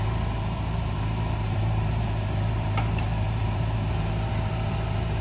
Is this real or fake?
fake